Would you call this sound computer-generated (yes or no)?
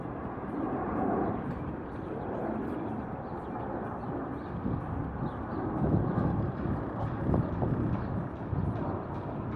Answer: no